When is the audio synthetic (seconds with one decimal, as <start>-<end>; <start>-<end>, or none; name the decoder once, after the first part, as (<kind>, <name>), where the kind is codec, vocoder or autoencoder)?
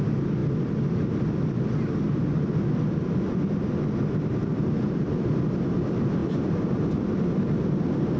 none